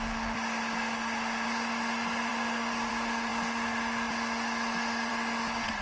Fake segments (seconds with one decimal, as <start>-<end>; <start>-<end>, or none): none